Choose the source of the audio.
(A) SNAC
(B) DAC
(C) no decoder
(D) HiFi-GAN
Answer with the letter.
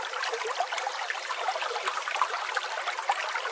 C